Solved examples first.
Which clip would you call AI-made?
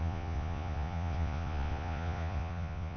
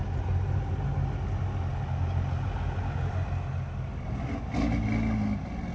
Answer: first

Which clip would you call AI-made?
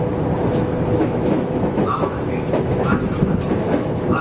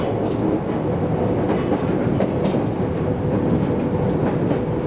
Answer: first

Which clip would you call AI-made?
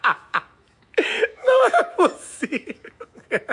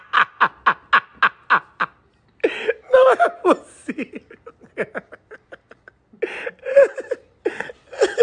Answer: first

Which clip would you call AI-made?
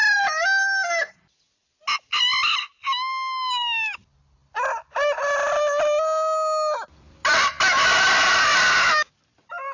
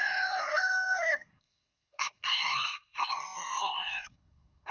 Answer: second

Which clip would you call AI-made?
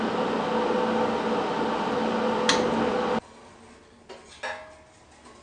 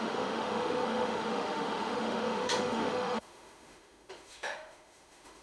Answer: second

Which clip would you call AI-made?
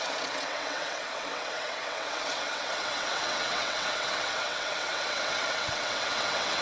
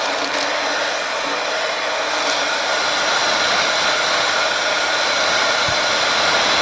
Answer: first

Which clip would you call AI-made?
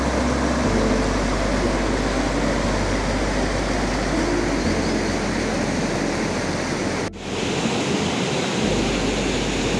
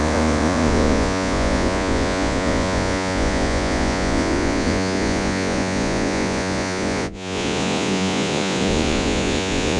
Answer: second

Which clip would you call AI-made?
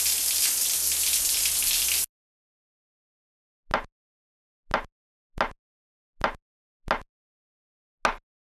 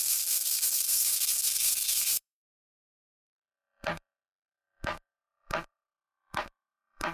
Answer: second